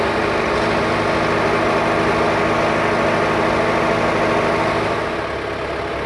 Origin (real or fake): real